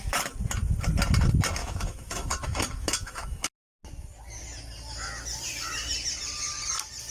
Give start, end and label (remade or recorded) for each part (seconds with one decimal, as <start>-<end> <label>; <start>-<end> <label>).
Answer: 0.0-1.6 recorded; 1.6-3.5 remade; 3.5-7.1 recorded

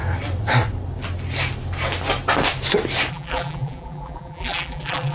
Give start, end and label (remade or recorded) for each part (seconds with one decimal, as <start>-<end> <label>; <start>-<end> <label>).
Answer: 0.0-3.1 recorded; 3.1-5.1 remade

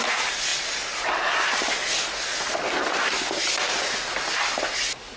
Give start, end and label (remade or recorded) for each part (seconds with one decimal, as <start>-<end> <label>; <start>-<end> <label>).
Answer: 0.0-5.2 recorded

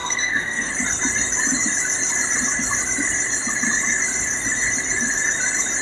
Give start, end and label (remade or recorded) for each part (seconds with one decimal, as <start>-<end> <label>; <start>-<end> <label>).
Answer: 0.0-0.7 remade; 0.7-5.8 recorded

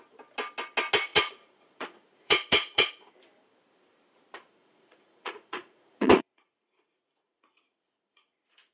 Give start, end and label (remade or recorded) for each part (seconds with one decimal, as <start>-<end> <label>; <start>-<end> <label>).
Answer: 0.0-1.1 recorded; 1.1-3.1 remade; 3.1-4.6 recorded; 4.6-8.7 remade

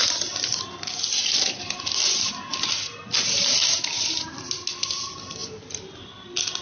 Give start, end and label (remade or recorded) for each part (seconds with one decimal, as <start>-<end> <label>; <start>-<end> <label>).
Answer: 0.0-6.6 recorded

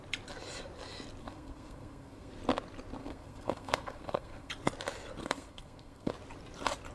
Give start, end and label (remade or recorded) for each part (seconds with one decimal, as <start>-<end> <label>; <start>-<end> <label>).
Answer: 0.0-1.2 recorded; 1.2-2.3 remade; 2.3-3.0 recorded; 3.0-4.5 remade; 4.5-5.2 recorded; 5.2-6.1 remade; 6.1-6.9 recorded